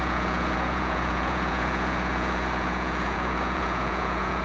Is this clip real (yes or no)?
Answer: no